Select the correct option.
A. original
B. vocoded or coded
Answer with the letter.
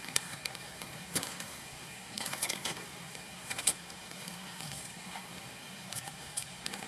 B